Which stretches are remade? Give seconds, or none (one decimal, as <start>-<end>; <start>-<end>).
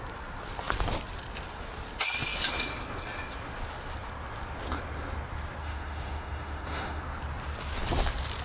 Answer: 5.6-7.0